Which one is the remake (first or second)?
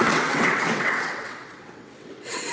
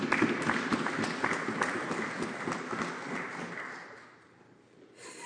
first